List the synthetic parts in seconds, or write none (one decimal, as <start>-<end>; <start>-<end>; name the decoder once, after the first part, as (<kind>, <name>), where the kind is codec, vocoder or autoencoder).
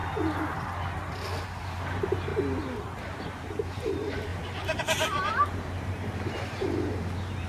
1.6-2.3 (vocoder, BigVGAN v2); 3.7-4.3; 4.8-7.5